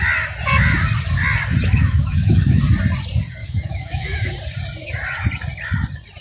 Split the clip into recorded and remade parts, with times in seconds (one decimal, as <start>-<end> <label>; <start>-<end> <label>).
0.0-1.8 recorded; 1.8-2.6 remade; 2.6-3.4 recorded; 3.4-4.3 remade; 4.3-6.2 recorded